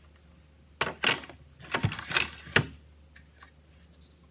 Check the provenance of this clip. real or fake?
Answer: real